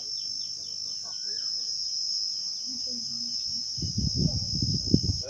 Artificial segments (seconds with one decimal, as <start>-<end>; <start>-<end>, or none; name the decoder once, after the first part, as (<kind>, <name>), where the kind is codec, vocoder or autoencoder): none